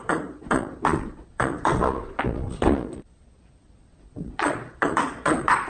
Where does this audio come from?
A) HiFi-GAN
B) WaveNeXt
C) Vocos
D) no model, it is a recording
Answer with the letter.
C